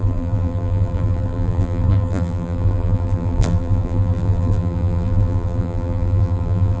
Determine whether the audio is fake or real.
fake